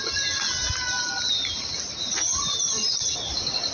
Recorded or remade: recorded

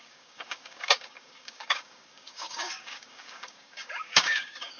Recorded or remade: remade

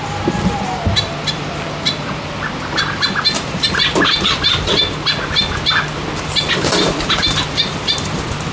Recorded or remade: recorded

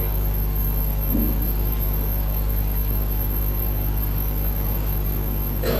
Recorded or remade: remade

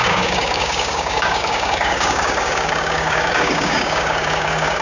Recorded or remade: remade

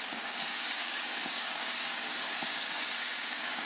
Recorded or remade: remade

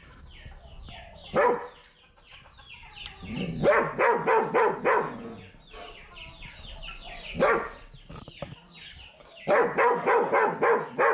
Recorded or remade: recorded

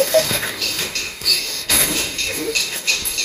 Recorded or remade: remade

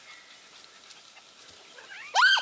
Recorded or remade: recorded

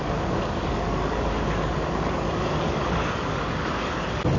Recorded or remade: remade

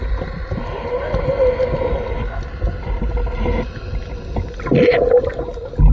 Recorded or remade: recorded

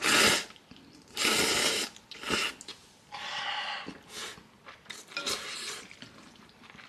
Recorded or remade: recorded